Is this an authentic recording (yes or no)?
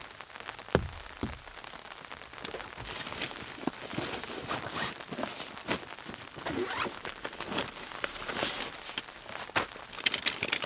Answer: yes